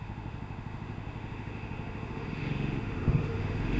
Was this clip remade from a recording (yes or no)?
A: yes